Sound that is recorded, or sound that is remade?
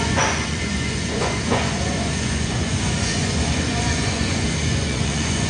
remade